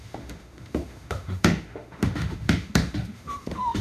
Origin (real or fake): fake